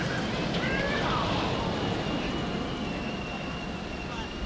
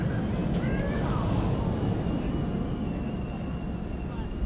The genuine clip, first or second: second